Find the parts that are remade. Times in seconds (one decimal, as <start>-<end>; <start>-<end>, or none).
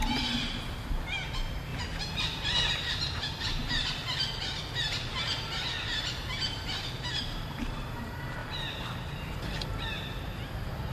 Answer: none